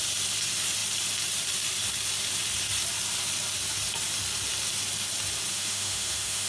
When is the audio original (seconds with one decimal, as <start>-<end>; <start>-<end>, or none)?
0.0-5.5